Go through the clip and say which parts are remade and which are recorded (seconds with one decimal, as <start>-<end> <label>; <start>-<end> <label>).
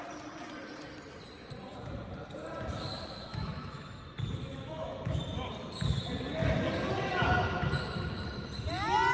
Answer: 0.0-3.3 recorded; 3.3-4.0 remade; 4.0-4.5 recorded; 4.5-5.2 remade; 5.2-9.1 recorded